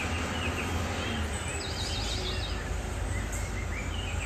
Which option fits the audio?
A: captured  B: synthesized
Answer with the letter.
A